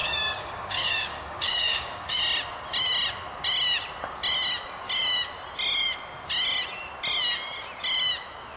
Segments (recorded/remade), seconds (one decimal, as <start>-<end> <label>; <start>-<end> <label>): 0.0-2.2 remade; 2.2-8.6 recorded